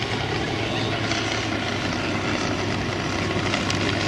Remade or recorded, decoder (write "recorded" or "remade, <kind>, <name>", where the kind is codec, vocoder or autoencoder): recorded